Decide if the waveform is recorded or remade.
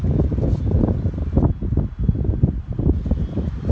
recorded